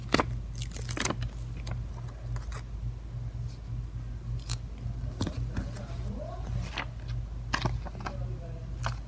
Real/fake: real